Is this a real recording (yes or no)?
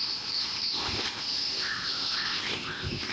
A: no